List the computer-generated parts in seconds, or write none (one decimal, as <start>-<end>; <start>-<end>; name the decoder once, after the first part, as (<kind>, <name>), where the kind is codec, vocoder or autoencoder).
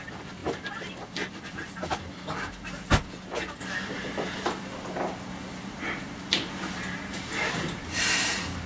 0.0-0.4 (vocoder, BigVGAN v2); 5.6-8.7